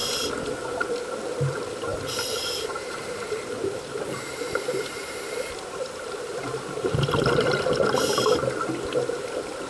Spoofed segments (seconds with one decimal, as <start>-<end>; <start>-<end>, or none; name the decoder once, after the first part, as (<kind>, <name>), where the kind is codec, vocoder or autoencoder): 1.9-6.9 (vocoder, BigVGAN v2)